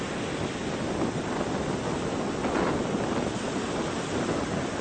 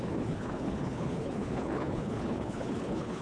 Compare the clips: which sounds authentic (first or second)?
first